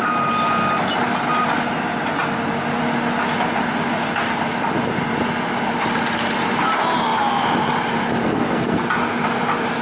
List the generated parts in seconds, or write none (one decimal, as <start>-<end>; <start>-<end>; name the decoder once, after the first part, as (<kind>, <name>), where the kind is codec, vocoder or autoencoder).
8.2-8.8 (codec, SNAC)